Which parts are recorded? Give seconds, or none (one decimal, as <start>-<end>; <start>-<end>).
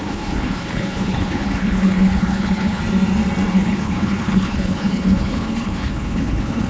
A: 2.8-3.5